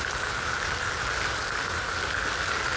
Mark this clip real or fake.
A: real